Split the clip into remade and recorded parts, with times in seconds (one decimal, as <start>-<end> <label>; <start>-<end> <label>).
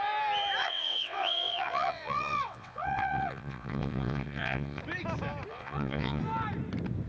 0.0-0.6 recorded; 0.6-4.8 remade; 4.8-5.5 recorded; 5.5-6.2 remade; 6.2-7.1 recorded